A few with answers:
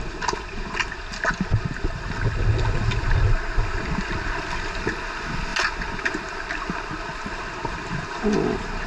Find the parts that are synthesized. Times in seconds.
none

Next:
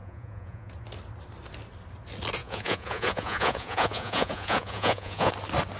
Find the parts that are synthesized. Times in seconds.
0.0-0.7 (vocoder, Vocos); 2.4-5.3

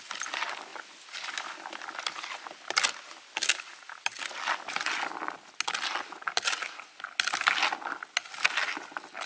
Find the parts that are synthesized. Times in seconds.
none

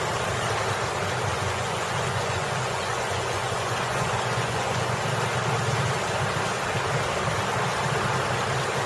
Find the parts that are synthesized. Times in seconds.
1.3-5.0 (vocoder, Vocos)

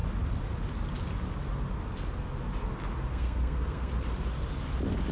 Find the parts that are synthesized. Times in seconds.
3.1-3.9 (codec, SNAC)

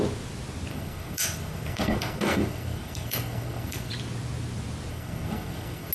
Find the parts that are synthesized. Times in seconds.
0.7-3.9 (codec, SNAC); 4.9-5.9

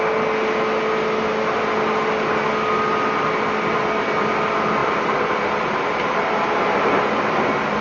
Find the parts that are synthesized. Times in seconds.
4.8-7.0 (vocoder, BigVGAN v2)